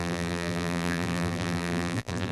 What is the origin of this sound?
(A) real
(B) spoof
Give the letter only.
B